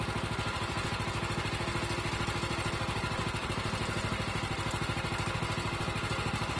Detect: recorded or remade recorded